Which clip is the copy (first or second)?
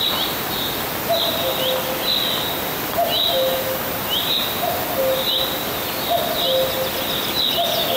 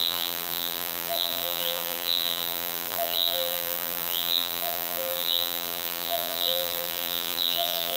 second